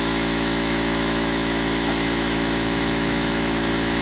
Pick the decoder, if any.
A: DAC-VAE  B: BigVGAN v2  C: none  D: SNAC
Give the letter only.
A